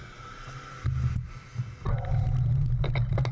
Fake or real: real